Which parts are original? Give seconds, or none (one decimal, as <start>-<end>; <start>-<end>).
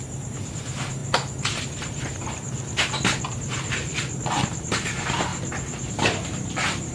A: 3.9-4.5; 5.3-5.9